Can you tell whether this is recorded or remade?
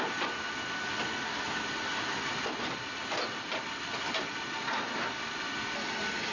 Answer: recorded